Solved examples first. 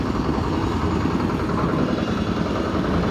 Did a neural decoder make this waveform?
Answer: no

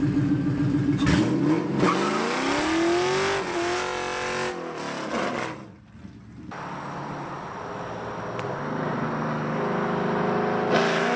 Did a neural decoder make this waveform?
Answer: no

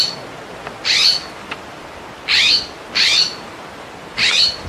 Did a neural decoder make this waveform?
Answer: no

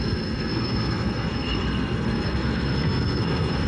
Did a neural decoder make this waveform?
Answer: yes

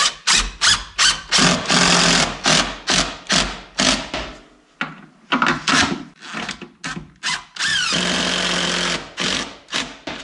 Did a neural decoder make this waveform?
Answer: no